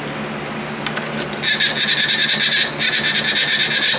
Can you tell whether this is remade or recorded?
recorded